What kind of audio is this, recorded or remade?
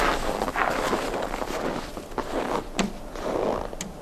recorded